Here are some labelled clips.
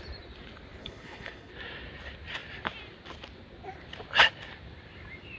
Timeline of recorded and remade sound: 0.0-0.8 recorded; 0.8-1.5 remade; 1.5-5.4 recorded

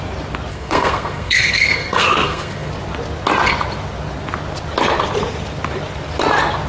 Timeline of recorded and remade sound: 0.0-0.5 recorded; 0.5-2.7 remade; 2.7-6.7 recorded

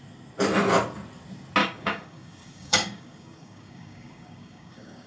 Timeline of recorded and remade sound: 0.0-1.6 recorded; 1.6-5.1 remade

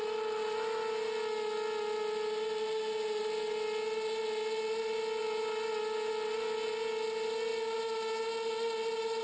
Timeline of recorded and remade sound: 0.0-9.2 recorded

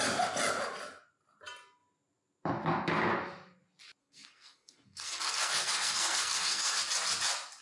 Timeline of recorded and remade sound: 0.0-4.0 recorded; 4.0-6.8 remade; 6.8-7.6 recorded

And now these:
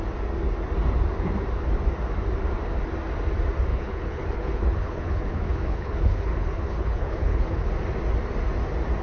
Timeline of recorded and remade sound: 0.0-3.7 recorded; 3.7-7.7 remade; 7.7-9.0 recorded

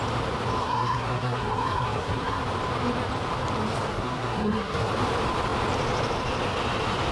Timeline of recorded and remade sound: 0.0-0.6 recorded; 0.6-2.4 remade; 2.4-3.9 recorded; 3.9-4.9 remade; 4.9-7.1 recorded